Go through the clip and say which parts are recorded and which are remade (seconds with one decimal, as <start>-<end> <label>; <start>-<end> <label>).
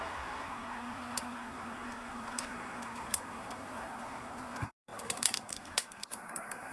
0.0-6.7 remade